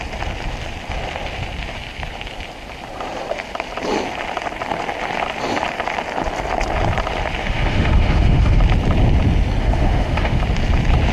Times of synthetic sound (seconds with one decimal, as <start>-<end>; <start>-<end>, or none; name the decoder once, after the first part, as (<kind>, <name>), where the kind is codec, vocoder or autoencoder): 7.4-8.6 (autoencoder, DAC-VAE); 9.6-10.4